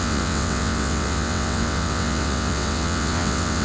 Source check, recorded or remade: remade